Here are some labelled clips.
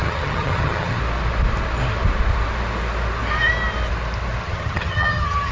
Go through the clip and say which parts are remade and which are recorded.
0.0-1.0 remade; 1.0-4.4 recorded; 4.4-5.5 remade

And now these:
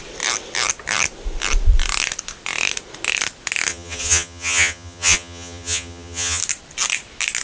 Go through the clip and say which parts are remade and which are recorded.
0.0-3.7 recorded; 3.7-6.4 remade; 6.4-7.4 recorded

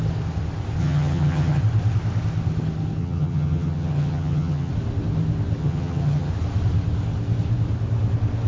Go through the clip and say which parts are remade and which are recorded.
0.0-0.8 recorded; 0.8-1.6 remade; 1.6-3.0 recorded; 3.0-4.7 remade; 4.7-5.6 recorded; 5.6-6.3 remade; 6.3-8.5 recorded